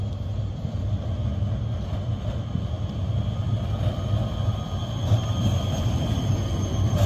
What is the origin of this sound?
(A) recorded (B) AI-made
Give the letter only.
A